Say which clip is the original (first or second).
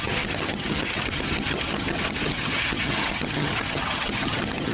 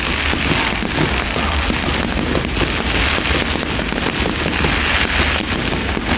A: second